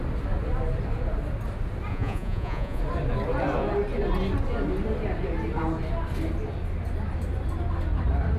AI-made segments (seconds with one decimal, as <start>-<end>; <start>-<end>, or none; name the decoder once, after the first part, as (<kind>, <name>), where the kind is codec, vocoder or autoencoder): 1.9-2.8 (vocoder, Vocos)